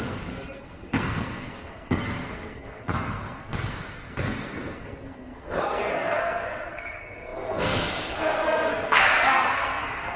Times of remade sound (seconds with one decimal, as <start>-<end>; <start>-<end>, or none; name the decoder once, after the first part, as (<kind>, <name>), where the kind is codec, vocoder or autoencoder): 0.0-10.2 (codec, SNAC)